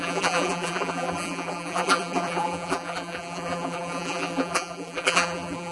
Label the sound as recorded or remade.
remade